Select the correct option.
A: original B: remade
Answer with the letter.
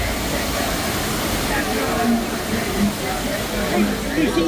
A